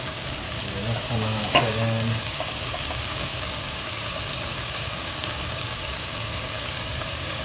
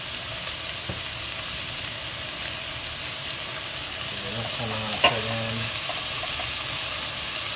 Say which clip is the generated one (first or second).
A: first